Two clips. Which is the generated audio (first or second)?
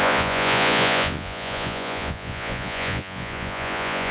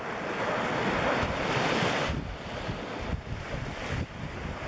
first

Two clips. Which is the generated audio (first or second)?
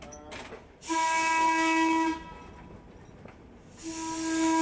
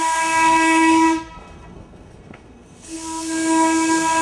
second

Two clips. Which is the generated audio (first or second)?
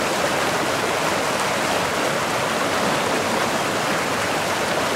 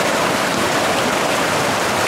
second